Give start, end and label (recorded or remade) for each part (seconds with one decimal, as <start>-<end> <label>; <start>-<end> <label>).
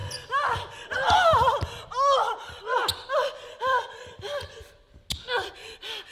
0.0-6.1 recorded